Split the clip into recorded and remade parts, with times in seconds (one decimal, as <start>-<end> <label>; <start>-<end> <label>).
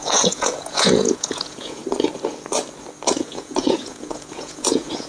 0.0-1.8 remade; 1.8-3.2 recorded; 3.2-5.1 remade